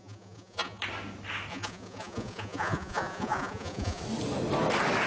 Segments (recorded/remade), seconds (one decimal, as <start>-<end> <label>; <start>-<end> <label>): 0.0-0.8 remade; 0.8-1.5 recorded; 1.5-4.0 remade; 4.0-5.1 recorded